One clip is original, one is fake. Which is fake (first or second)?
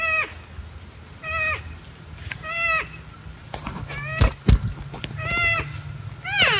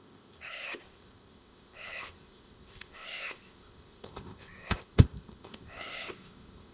second